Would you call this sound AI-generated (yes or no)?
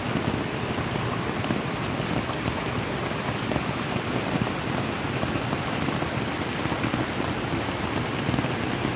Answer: no